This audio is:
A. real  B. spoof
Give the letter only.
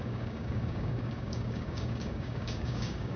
B